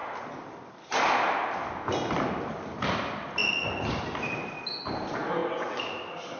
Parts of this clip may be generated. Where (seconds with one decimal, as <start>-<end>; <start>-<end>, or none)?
none